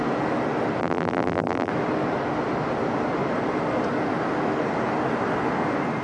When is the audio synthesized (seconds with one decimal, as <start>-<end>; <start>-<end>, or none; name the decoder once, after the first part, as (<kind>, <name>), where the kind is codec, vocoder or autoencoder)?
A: 0.8-1.7 (vocoder, BigVGAN v2)

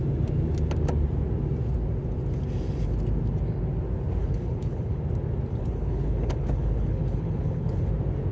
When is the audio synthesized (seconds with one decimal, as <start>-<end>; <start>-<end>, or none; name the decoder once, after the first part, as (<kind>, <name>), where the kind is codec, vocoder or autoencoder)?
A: 4.2-5.0 (codec, HILCodec); 5.5-7.9

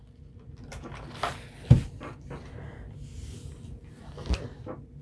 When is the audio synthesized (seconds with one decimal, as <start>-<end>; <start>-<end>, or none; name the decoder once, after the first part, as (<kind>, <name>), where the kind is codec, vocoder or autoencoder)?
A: none

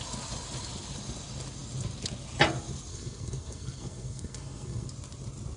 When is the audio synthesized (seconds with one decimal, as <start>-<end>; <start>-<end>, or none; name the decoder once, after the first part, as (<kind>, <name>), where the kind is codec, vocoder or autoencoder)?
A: 2.9-4.9 (codec, SNAC)

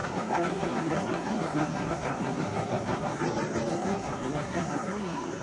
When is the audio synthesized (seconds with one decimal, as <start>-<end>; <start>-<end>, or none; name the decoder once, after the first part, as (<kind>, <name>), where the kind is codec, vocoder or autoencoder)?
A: 0.0-3.2 (codec, SNAC); 3.7-5.4

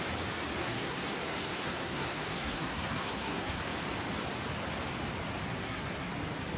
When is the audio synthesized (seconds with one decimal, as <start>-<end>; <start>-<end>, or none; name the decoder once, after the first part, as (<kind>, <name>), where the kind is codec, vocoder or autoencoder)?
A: 0.6-3.6 (codec, SNAC); 5.5-6.1

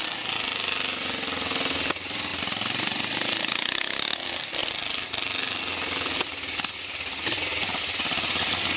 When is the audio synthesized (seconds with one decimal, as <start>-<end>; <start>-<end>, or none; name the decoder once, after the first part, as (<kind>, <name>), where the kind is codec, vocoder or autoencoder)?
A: 2.3-3.2 (vocoder, BigVGAN v2); 4.6-5.6; 7.5-8.0